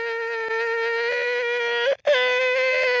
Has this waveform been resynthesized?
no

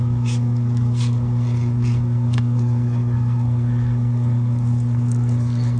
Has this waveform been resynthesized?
yes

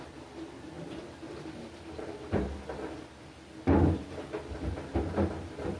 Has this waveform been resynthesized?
no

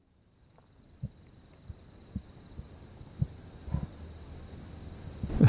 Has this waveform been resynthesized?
no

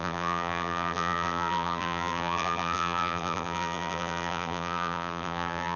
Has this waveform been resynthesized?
yes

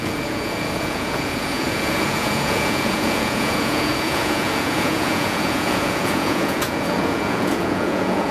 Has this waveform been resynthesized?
yes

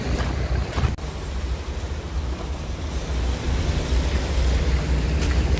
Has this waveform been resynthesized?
no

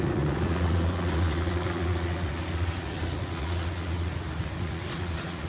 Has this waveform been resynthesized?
yes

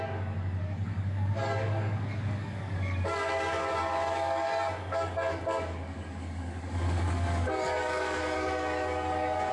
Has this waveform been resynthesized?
yes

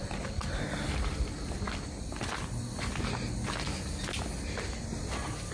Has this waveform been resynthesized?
no